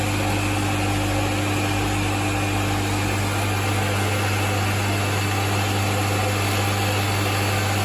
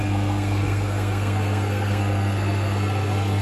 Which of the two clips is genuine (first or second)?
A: first